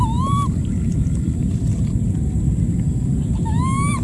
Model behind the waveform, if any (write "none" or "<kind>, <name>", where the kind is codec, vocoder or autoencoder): none